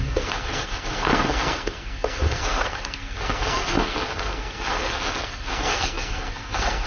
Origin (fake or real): fake